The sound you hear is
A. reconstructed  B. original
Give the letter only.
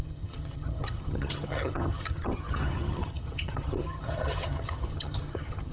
A